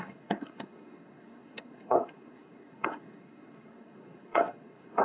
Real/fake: fake